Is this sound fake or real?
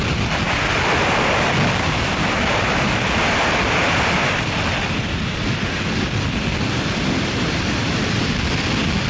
real